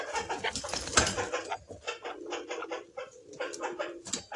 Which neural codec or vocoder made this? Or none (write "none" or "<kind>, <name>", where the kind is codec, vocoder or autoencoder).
none